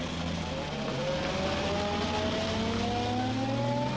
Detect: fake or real real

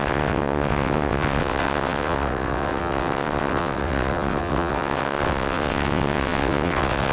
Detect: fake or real fake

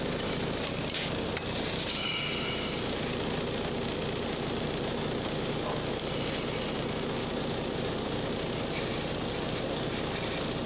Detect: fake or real real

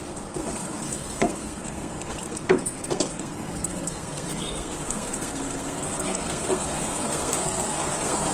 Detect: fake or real fake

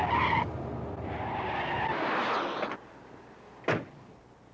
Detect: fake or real real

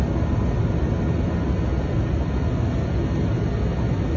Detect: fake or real real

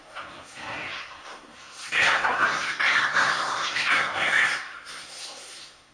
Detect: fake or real fake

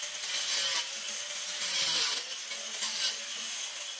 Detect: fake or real real